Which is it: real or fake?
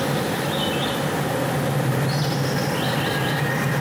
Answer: real